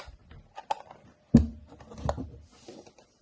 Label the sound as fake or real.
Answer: real